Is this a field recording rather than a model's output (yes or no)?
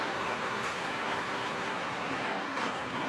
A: no